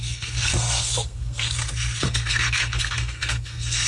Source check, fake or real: fake